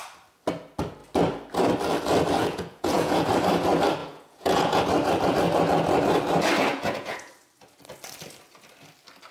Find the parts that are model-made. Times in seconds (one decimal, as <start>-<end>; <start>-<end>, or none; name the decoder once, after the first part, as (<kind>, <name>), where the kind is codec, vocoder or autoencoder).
2.4-3.3 (vocoder, Vocos); 4.0-4.8; 6.7-7.3

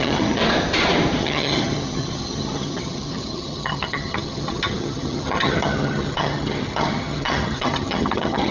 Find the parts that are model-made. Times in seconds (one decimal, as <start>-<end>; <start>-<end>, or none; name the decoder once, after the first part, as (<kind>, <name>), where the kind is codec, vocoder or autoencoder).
0.0-0.4 (vocoder, HiFi-GAN); 1.2-8.5